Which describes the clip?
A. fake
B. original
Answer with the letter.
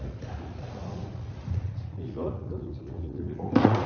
A